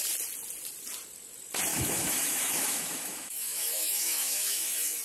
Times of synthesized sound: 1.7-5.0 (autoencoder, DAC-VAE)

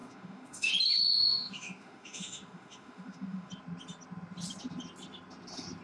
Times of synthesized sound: 0.0-0.7 (autoencoder, DAC-VAE); 1.2-3.5

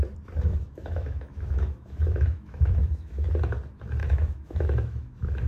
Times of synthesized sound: 0.5-3.3 (autoencoder, DAC-VAE); 4.0-5.5

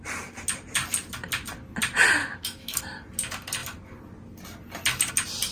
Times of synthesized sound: 2.2-2.8 (autoencoder, DAC-VAE)

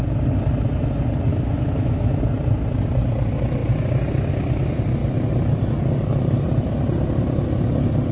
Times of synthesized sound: 1.3-2.2 (autoencoder, DAC-VAE)

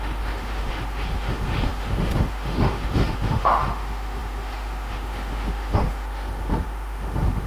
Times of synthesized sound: 0.0-7.5 (autoencoder, DAC-VAE)

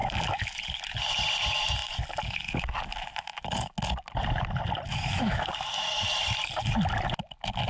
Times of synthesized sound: 4.9-5.5 (autoencoder, DAC-VAE)

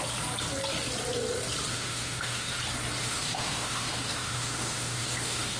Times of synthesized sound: 1.7-2.6 (autoencoder, DAC-VAE); 3.0-5.6